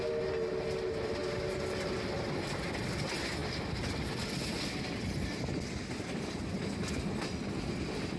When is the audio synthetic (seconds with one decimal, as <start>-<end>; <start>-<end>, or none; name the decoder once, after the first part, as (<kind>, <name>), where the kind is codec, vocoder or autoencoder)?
none